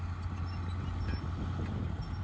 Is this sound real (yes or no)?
yes